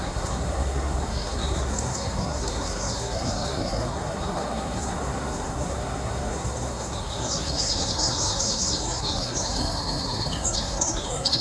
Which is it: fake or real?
fake